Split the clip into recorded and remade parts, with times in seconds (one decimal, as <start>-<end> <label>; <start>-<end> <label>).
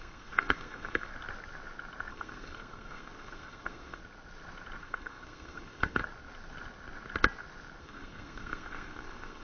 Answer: 0.0-1.1 remade; 1.1-2.1 recorded; 2.1-4.0 remade; 4.0-4.8 recorded; 4.8-6.0 remade; 6.0-7.8 recorded; 7.8-9.4 remade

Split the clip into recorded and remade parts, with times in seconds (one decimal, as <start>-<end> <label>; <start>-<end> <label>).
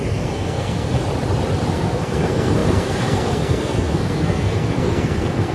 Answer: 0.0-1.0 remade; 1.0-1.7 recorded; 1.7-5.5 remade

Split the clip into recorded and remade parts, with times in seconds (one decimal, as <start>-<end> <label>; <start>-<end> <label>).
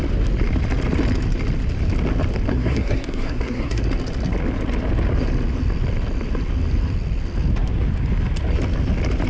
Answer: 0.0-2.5 recorded; 2.5-3.8 remade; 3.8-9.3 recorded